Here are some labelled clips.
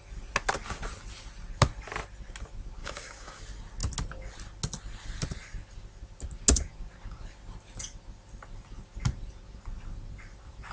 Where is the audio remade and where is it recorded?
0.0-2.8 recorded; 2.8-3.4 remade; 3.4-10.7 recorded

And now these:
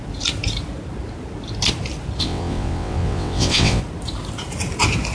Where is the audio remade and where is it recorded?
0.0-2.2 recorded; 2.2-3.8 remade; 3.8-5.1 recorded

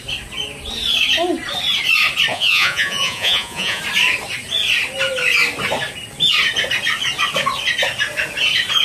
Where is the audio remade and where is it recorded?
0.0-2.3 recorded; 2.3-3.8 remade; 3.8-8.8 recorded

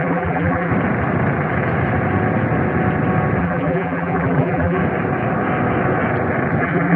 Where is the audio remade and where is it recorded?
0.0-0.7 remade; 0.7-3.4 recorded; 3.4-4.8 remade; 4.8-6.6 recorded; 6.6-7.0 remade

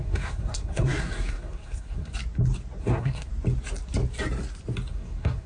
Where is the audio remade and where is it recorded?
0.0-2.1 remade; 2.1-2.8 recorded; 2.8-3.3 remade; 3.3-4.9 recorded; 4.9-5.5 remade

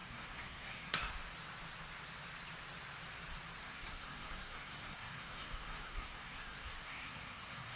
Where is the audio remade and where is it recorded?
0.0-1.1 remade; 1.1-3.6 recorded; 3.6-7.8 remade